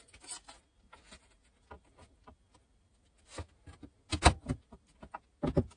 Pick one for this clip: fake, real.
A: real